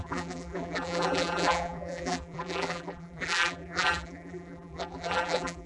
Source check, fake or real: fake